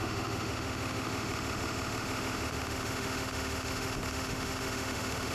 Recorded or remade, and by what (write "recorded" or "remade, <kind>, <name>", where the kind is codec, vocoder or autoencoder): remade, autoencoder, DAC-VAE